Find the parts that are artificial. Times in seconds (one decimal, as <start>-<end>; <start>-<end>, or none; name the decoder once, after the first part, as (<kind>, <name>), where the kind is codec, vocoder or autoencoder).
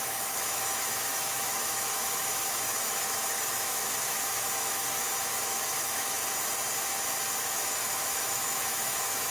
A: 0.0-6.2 (autoencoder, DAC-VAE); 7.4-9.3